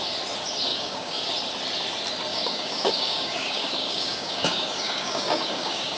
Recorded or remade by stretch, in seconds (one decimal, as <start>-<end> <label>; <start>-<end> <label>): 0.0-0.7 recorded; 0.7-1.2 remade; 1.2-2.3 recorded; 2.3-6.0 remade